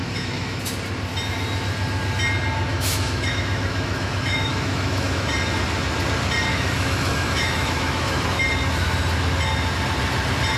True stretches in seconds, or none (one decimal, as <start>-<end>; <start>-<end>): 0.6-2.7; 5.3-6.5; 8.4-10.6